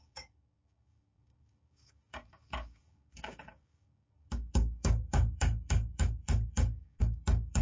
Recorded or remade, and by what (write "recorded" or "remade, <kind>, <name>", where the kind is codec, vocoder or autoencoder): remade, codec, DAC